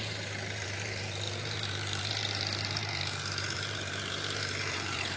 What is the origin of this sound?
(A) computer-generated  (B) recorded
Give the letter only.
A